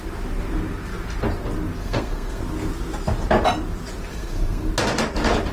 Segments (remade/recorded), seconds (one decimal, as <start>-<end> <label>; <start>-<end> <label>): 0.0-1.8 recorded; 1.8-2.4 remade; 2.4-4.1 recorded; 4.1-4.7 remade; 4.7-5.5 recorded